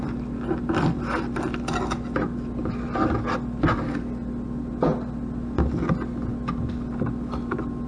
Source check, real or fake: real